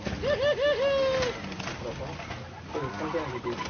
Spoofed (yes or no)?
no